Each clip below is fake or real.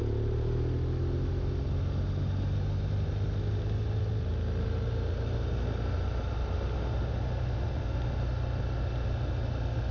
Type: real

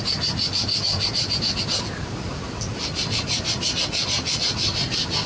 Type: real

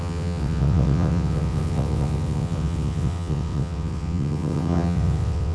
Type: fake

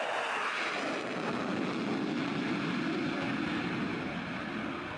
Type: real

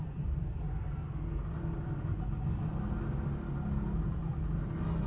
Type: real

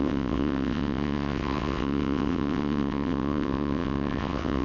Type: fake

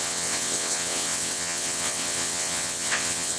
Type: fake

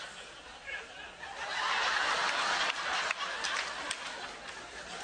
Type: real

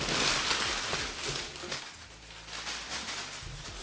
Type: real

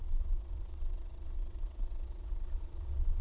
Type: fake